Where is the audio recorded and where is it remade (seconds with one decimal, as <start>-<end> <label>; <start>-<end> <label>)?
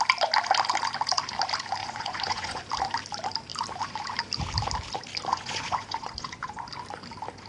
0.0-1.8 recorded; 1.8-2.6 remade; 2.6-5.3 recorded; 5.3-6.7 remade; 6.7-7.5 recorded